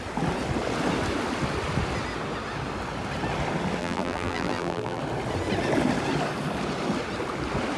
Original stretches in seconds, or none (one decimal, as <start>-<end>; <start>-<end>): 0.0-3.8; 5.0-7.8